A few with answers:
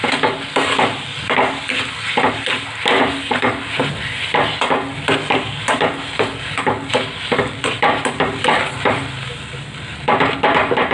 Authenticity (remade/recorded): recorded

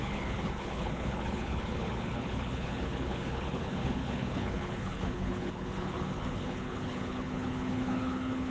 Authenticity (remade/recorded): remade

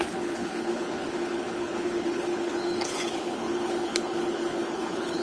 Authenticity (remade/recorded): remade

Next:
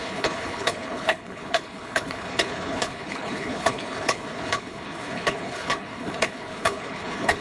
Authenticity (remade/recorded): remade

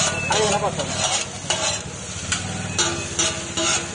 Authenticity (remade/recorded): recorded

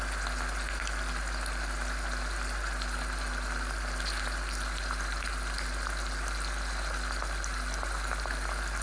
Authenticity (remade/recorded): recorded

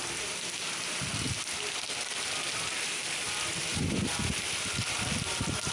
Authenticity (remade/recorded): recorded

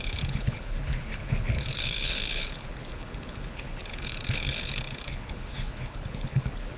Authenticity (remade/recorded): remade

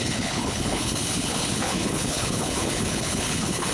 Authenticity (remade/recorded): remade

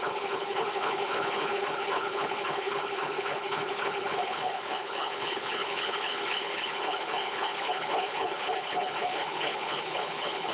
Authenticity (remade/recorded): remade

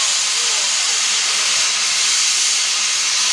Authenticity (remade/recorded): recorded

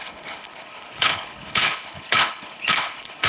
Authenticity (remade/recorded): remade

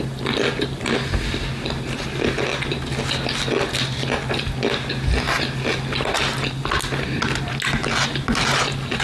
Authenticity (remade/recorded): recorded